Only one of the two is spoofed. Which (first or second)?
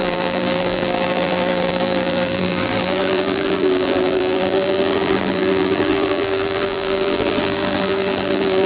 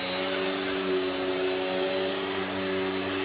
first